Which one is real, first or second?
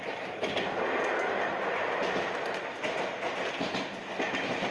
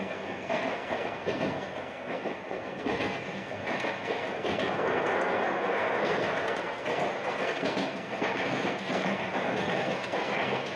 first